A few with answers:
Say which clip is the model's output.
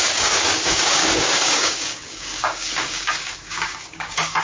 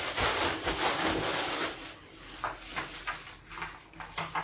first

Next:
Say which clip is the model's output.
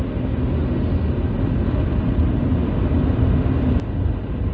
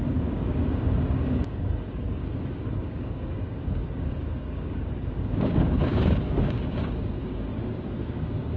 second